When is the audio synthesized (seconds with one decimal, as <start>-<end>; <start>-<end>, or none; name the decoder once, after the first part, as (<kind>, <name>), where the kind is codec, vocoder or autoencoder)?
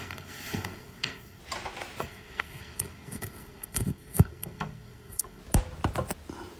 0.0-1.4 (codec, SNAC); 2.0-5.4